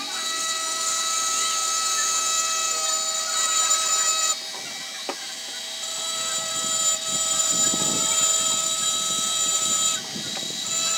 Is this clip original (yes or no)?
yes